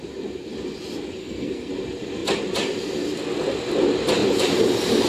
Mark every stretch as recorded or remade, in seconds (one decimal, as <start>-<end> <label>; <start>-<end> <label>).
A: 0.0-1.2 recorded; 1.2-1.7 remade; 1.7-5.1 recorded